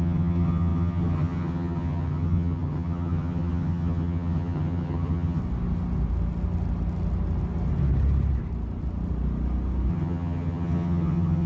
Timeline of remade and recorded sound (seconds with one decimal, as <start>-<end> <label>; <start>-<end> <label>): 0.0-5.4 remade; 5.4-9.9 recorded; 9.9-11.5 remade